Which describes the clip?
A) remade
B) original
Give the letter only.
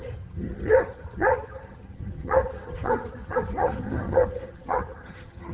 A